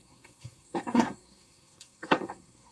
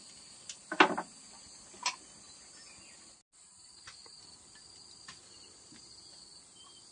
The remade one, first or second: first